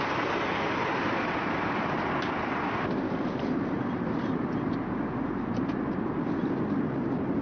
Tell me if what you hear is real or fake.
real